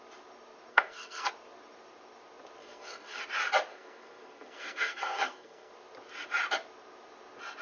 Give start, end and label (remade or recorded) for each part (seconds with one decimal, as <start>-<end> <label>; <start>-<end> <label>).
0.0-0.7 recorded; 0.7-1.3 remade; 1.3-2.6 recorded; 2.6-3.2 remade; 3.2-3.7 recorded; 3.7-5.7 remade; 5.7-7.6 recorded